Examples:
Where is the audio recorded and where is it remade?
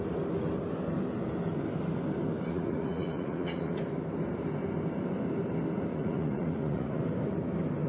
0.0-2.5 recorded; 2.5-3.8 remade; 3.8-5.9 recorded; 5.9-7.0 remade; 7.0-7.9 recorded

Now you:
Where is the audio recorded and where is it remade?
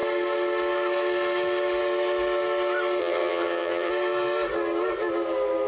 0.0-3.0 recorded; 3.0-3.9 remade; 3.9-5.7 recorded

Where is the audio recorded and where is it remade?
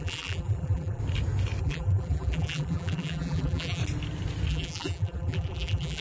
0.0-1.0 remade; 1.0-1.6 recorded; 1.6-3.8 remade; 3.8-4.5 recorded; 4.5-6.0 remade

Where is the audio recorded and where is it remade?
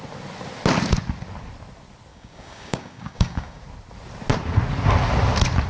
0.0-2.1 recorded; 2.1-3.6 remade; 3.6-5.7 recorded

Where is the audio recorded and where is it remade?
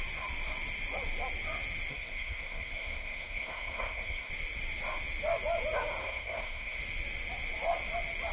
0.0-1.9 recorded; 1.9-4.3 remade; 4.3-6.0 recorded; 6.0-6.8 remade; 6.8-8.3 recorded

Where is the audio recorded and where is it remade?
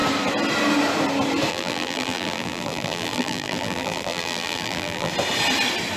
0.0-1.5 recorded; 1.5-5.1 remade; 5.1-6.0 recorded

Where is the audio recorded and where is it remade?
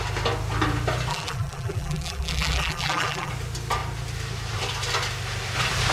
0.0-1.1 recorded; 1.1-3.3 remade; 3.3-5.9 recorded